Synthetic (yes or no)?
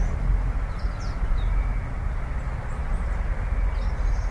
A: no